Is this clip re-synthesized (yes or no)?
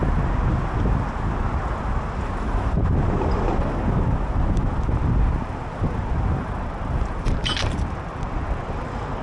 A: no